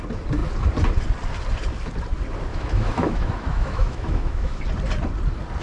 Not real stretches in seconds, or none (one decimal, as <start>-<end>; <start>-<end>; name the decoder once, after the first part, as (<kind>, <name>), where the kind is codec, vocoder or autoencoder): 2.5-4.6 (autoencoder, DAC-VAE)